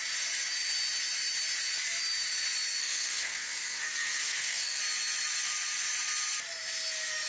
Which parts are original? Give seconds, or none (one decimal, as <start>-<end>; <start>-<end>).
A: 0.0-2.8; 4.8-7.3